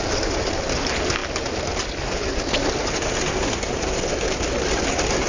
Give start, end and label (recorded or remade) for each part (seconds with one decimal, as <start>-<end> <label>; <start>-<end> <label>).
0.0-5.3 recorded